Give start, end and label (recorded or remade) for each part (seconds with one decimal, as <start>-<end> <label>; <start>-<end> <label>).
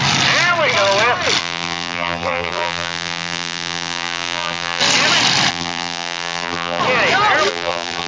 0.0-1.4 recorded; 1.4-4.8 remade; 4.8-5.5 recorded; 5.5-6.8 remade; 6.8-7.5 recorded; 7.5-8.1 remade